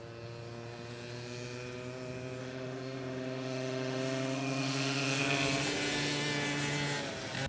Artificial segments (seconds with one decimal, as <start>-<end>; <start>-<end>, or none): 2.4-5.2